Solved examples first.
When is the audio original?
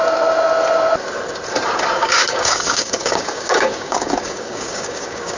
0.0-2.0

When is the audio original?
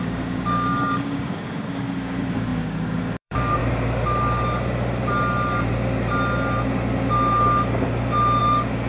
3.6-8.4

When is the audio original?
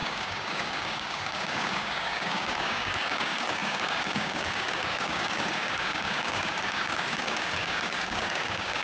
none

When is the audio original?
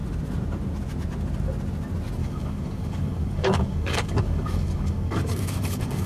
0.0-2.2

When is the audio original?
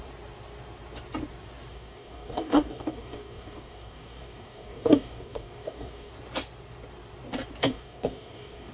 0.0-1.7; 6.1-7.6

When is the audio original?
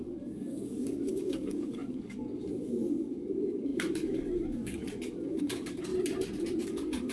5.9-6.6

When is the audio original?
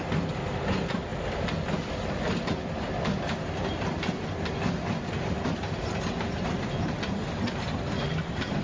0.0-8.6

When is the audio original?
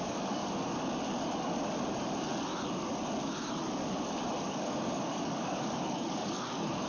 0.4-4.5